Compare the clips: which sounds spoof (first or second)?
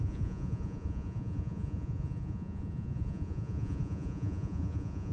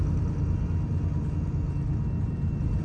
first